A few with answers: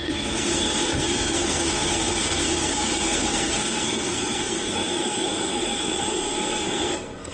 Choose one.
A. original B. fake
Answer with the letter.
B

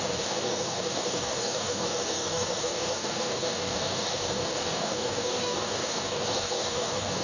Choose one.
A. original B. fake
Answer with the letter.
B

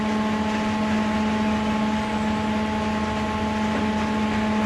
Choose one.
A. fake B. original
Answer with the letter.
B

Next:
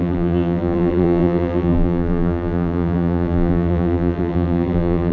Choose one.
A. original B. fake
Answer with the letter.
B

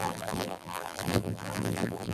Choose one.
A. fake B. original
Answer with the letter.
A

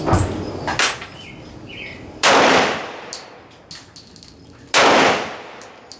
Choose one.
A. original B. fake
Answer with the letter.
A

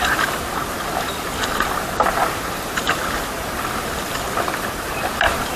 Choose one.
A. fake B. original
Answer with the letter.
B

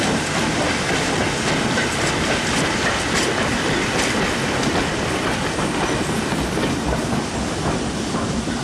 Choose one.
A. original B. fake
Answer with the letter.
A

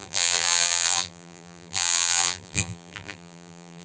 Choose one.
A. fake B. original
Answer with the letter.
A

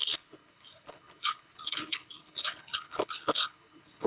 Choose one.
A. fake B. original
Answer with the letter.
A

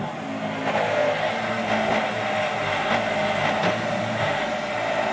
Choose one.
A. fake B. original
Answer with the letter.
B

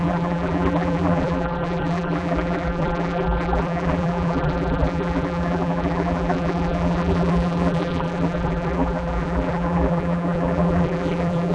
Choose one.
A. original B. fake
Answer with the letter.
B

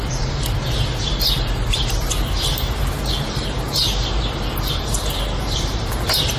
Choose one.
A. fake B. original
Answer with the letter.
A